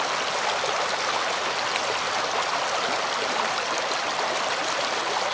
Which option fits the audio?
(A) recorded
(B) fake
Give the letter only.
A